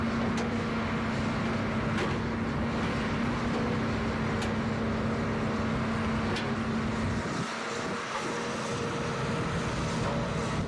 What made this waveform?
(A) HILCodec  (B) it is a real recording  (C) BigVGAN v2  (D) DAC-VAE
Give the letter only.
B